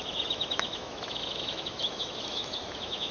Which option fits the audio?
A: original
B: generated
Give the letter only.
B